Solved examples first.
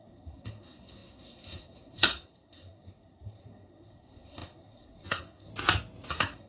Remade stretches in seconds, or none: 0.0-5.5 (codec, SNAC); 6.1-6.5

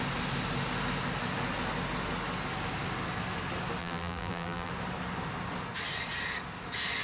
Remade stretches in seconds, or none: 3.8-4.7 (vocoder, BigVGAN v2)

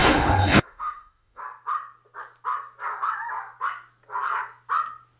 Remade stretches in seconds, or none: 0.0-1.4 (autoencoder, DAC-VAE)

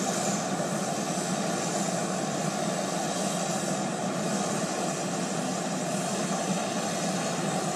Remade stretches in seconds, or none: none

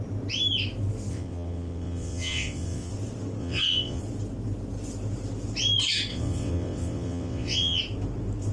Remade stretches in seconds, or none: 1.1-2.9 (vocoder, WaveNeXt); 3.4-4.0; 6.1-7.8

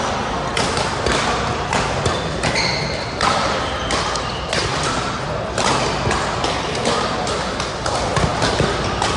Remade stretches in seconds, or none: none

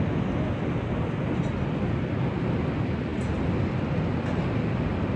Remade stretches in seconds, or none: none